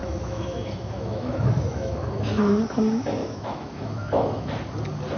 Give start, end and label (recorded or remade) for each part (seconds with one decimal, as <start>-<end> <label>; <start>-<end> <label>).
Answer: 0.0-2.6 remade; 2.6-3.2 recorded; 3.2-4.6 remade; 4.6-5.2 recorded